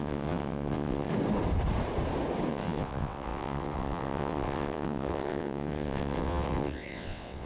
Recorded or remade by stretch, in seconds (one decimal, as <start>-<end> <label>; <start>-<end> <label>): 0.0-1.1 remade; 1.1-2.5 recorded; 2.5-7.5 remade